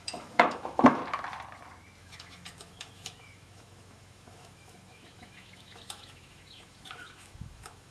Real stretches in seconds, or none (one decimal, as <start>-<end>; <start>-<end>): 1.0-2.0